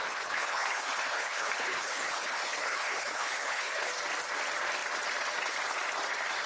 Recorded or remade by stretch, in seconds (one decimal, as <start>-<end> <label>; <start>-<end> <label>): 0.0-3.9 remade; 3.9-6.5 recorded

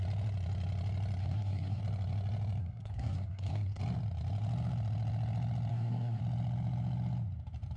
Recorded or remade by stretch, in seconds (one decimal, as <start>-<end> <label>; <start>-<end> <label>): 0.0-1.2 recorded; 1.2-1.8 remade; 1.8-2.6 recorded; 2.6-3.8 remade; 3.8-5.7 recorded; 5.7-6.2 remade; 6.2-7.8 recorded

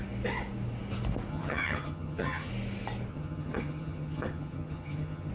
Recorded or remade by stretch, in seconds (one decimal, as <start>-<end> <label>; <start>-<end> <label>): 0.0-1.3 recorded; 1.3-2.5 remade; 2.5-3.1 recorded; 3.1-5.3 remade